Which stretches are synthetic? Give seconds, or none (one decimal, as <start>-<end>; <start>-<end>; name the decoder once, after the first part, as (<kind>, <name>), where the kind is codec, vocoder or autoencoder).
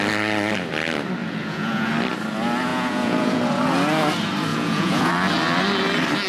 1.2-1.9 (vocoder, Vocos); 2.7-3.4; 4.5-5.1